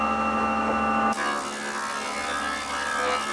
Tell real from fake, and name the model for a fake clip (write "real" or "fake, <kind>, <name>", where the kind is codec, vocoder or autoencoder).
real